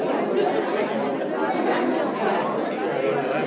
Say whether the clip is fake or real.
real